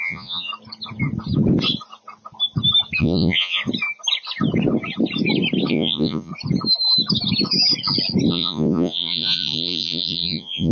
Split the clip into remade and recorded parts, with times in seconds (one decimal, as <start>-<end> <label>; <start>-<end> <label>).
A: 0.0-0.5 remade; 0.5-3.0 recorded; 3.0-3.6 remade; 3.6-5.7 recorded; 5.7-6.3 remade; 6.3-8.3 recorded; 8.3-10.7 remade